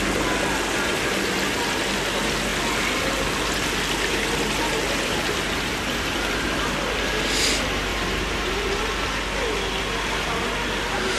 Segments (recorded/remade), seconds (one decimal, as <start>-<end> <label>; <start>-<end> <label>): 0.0-7.9 recorded; 7.9-8.8 remade; 8.8-11.2 recorded